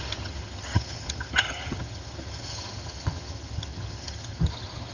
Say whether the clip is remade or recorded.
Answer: remade